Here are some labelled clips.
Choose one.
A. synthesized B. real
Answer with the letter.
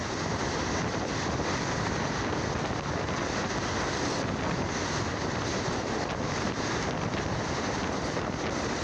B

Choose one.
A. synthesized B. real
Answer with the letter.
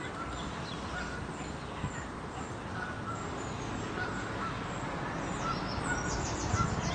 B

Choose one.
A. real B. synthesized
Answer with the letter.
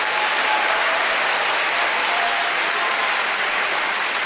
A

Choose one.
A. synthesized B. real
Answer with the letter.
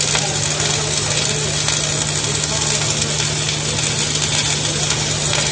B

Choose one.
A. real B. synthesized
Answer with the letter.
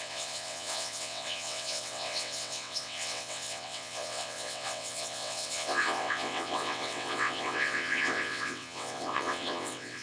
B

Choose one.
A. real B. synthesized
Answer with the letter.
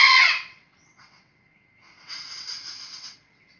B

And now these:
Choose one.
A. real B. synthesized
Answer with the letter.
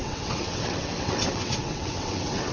B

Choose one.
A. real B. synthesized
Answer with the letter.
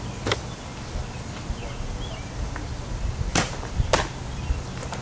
A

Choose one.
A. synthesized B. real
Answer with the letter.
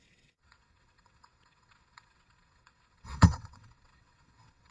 A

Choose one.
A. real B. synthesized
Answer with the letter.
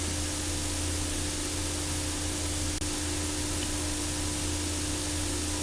A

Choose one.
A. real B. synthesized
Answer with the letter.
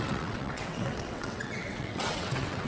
B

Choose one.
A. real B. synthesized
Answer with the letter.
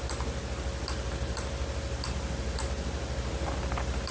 A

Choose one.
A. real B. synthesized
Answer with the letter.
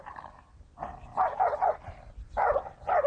A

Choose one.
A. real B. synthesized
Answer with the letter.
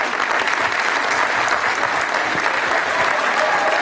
A